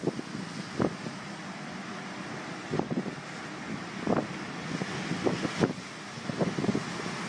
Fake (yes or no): no